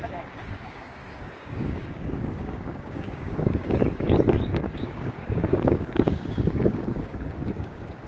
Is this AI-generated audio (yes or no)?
yes